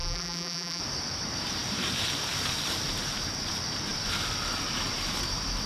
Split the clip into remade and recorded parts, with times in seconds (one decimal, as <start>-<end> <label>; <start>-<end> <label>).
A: 0.0-0.8 remade; 0.8-5.7 recorded